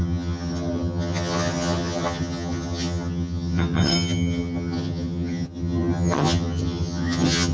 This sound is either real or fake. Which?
fake